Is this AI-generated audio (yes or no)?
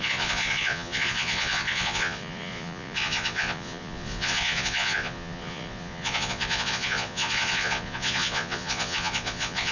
yes